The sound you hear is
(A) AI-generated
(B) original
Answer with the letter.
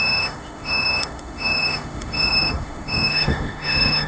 A